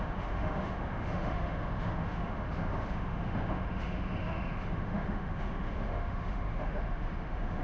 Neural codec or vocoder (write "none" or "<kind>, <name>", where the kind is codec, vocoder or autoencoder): autoencoder, DAC-VAE